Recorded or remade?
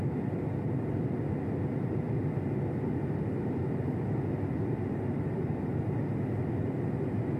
recorded